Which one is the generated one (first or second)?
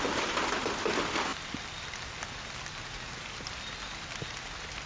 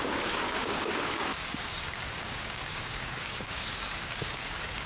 second